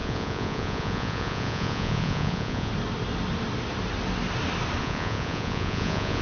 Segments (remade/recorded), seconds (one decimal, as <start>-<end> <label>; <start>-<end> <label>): 0.0-2.7 remade; 2.7-4.8 recorded; 4.8-6.2 remade